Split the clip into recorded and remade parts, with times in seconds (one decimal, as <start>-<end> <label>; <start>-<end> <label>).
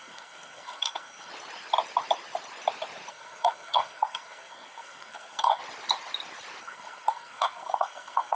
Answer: 0.0-1.3 remade; 1.3-3.1 recorded; 3.1-5.6 remade; 5.6-6.6 recorded; 6.6-8.4 remade